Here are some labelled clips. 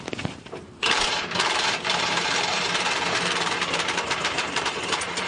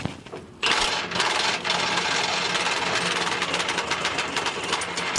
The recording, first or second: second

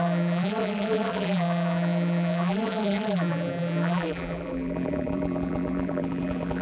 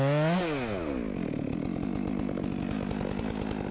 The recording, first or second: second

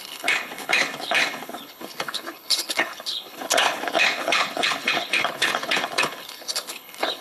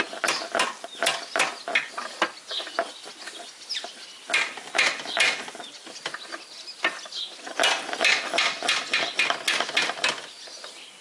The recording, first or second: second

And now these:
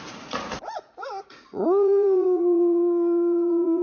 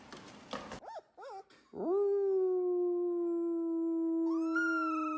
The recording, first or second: second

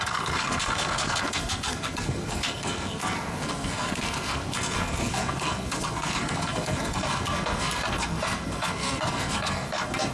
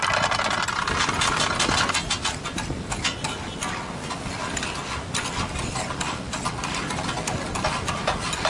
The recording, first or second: second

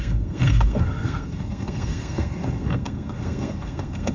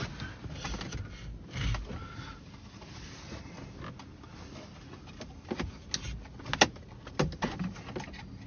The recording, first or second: second